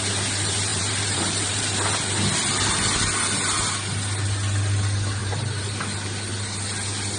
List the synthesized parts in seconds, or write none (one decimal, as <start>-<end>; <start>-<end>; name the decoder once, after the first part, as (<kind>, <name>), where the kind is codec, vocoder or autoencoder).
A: 0.7-1.6 (vocoder, BigVGAN v2); 5.2-5.8